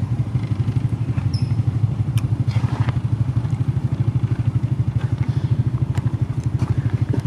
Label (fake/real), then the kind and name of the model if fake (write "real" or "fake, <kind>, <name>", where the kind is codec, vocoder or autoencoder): fake, vocoder, BigVGAN v2